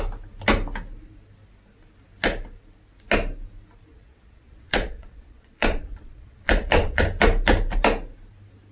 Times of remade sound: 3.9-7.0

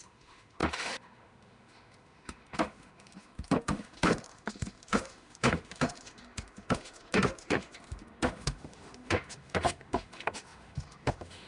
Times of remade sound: 0.0-11.5

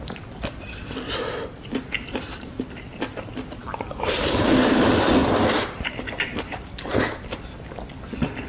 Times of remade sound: 3.6-4.4; 5.2-6.9

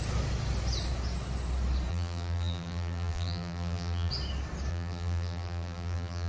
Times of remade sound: 1.9-4.1; 4.7-6.3

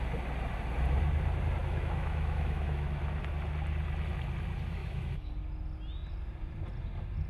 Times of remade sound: 1.6-3.0; 4.8-5.3

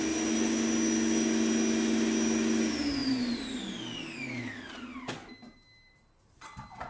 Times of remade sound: none

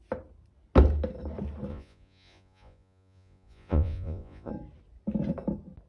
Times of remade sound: 1.7-4.5